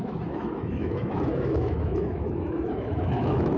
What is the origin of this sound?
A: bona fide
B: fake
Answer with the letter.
B